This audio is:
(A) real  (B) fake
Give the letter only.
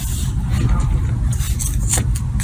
A